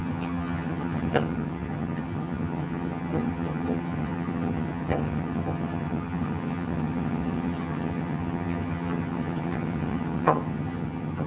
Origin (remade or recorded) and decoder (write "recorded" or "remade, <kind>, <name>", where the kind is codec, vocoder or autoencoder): remade, vocoder, HiFi-GAN